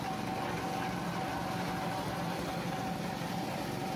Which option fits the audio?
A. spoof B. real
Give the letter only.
B